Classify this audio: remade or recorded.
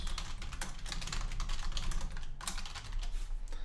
recorded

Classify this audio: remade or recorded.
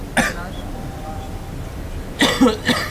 recorded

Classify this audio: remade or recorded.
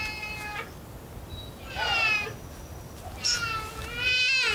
recorded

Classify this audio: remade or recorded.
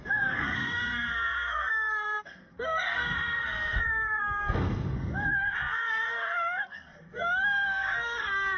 remade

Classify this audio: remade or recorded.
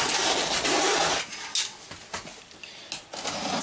recorded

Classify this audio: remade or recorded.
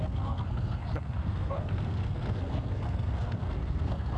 remade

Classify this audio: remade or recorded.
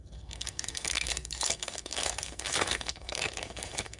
remade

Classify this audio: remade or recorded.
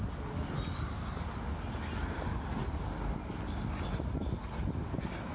recorded